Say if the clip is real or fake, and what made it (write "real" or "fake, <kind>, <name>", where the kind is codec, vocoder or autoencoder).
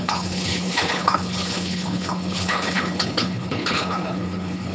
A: fake, codec, HILCodec